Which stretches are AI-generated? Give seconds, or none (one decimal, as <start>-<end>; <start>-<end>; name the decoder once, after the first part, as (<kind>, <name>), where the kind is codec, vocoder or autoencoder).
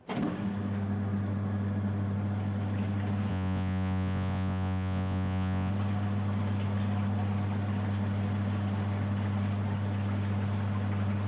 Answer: 3.3-5.7 (vocoder, Vocos)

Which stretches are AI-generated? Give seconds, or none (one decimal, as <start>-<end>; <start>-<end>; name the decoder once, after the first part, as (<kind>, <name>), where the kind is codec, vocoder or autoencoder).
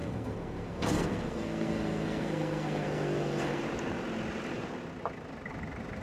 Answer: 0.0-3.6 (codec, SNAC)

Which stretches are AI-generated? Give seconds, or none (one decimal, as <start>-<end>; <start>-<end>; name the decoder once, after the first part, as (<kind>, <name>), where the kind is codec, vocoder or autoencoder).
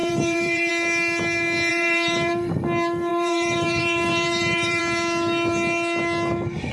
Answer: 0.0-0.7 (vocoder, BigVGAN v2); 1.7-2.5; 3.1-4.8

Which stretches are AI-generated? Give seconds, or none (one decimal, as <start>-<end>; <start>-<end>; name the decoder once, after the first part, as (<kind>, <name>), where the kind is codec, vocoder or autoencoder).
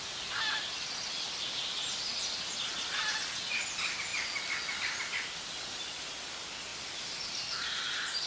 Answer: 4.1-5.0 (vocoder, BigVGAN v2); 6.7-7.8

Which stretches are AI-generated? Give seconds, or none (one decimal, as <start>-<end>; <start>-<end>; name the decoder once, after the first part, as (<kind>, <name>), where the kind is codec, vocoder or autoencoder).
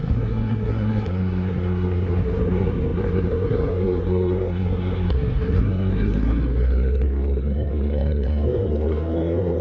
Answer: 0.0-9.6 (codec, SNAC)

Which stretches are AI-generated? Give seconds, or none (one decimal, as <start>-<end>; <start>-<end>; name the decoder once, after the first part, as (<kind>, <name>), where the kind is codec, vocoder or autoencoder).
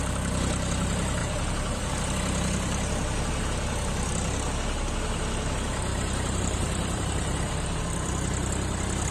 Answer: 1.2-1.9 (vocoder, BigVGAN v2); 5.9-7.5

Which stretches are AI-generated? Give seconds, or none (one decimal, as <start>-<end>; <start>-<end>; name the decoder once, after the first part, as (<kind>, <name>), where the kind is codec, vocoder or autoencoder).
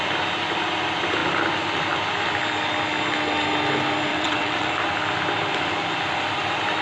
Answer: 4.1-4.7 (vocoder, WaveNeXt)